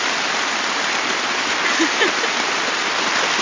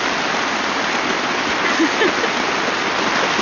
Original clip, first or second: second